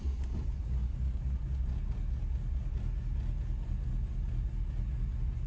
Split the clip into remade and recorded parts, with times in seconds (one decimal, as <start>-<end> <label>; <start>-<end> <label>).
0.0-5.5 recorded